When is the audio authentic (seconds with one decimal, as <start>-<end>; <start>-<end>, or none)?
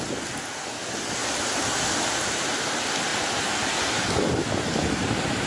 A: 0.0-5.5